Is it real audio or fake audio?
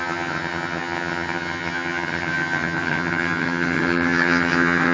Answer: fake